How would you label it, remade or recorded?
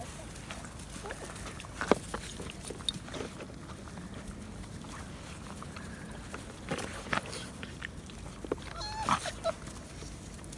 recorded